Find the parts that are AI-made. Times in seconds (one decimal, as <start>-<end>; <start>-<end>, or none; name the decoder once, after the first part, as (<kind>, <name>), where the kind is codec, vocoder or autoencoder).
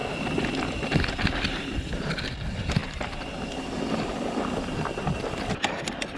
none